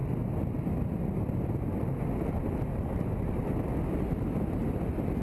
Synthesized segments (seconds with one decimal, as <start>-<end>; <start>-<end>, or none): none